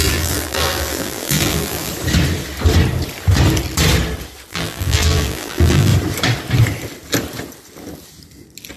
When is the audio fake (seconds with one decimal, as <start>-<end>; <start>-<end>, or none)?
0.0-1.9; 4.5-5.9